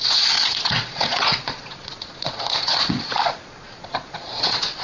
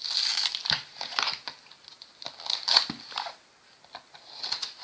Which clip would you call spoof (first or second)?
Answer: first